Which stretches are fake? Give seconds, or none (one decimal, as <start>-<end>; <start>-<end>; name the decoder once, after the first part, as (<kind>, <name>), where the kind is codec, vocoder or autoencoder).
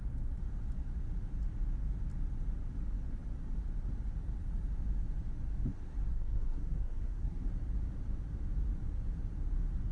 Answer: 6.1-7.5 (codec, SNAC)